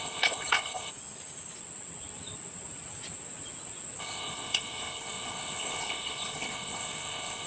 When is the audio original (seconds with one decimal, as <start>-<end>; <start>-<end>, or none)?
0.9-4.0